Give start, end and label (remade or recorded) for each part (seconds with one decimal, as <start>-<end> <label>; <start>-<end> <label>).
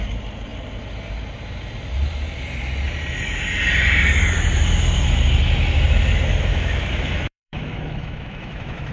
0.0-6.5 recorded; 6.5-8.9 remade